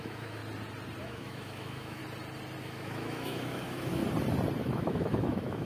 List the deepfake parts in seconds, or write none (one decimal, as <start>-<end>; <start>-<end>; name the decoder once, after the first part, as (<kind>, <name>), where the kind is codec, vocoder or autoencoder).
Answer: 0.0-0.4 (autoencoder, DAC-VAE); 1.0-2.0; 2.6-4.0; 4.6-5.6